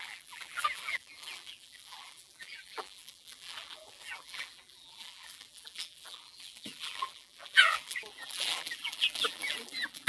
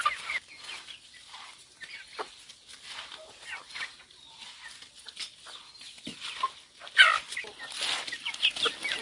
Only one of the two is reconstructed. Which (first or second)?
first